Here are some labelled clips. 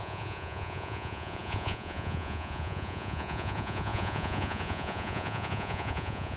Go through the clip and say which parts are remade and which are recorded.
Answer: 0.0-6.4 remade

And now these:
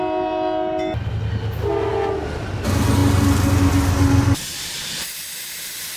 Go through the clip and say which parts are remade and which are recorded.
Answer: 0.0-6.0 recorded

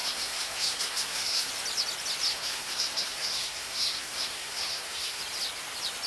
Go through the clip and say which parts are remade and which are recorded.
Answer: 0.0-1.5 remade; 1.5-2.3 recorded; 2.3-5.2 remade; 5.2-6.1 recorded